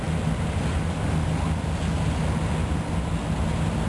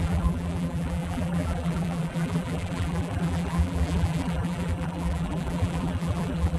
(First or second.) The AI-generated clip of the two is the second